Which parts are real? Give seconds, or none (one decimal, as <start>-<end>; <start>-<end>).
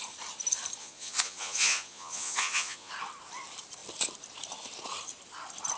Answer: 0.0-0.8; 2.9-5.8